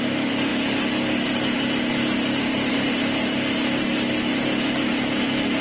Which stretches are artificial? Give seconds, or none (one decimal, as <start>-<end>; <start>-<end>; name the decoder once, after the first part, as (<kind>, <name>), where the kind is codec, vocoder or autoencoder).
none